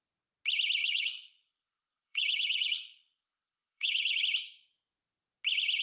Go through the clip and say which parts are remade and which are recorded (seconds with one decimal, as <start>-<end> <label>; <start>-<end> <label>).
0.0-0.8 recorded; 0.8-4.2 remade; 4.2-5.8 recorded